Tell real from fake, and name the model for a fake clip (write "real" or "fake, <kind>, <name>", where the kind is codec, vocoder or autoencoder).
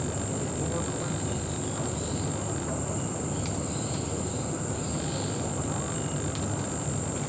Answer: real